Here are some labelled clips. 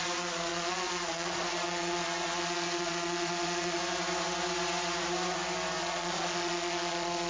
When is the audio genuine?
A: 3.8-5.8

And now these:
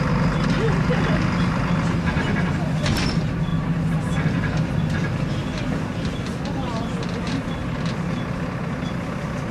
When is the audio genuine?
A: 0.0-9.5

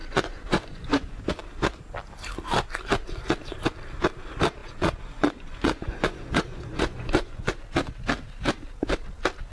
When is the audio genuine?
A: 1.3-4.6; 7.5-9.5

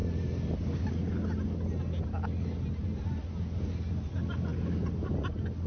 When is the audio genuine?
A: 0.0-5.7

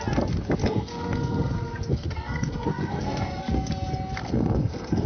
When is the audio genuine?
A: 0.0-0.6; 3.7-4.2

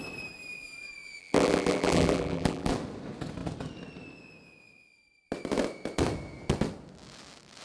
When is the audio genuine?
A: 0.0-1.2; 2.7-7.6